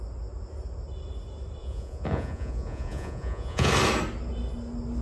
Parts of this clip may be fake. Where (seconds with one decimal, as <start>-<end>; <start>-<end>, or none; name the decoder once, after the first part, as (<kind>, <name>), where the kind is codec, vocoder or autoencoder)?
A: 1.6-3.7 (vocoder, Vocos)